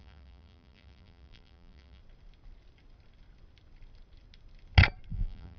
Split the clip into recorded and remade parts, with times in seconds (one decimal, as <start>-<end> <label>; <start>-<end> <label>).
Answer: 0.0-2.0 remade; 2.0-5.1 recorded; 5.1-5.6 remade